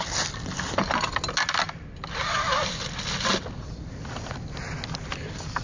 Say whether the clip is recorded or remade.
recorded